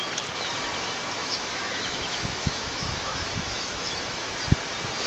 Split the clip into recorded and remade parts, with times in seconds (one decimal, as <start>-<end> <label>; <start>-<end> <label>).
0.0-1.2 recorded; 1.2-4.3 remade; 4.3-5.1 recorded